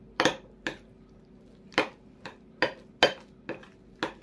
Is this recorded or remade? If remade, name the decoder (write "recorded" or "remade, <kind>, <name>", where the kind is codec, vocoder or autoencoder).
recorded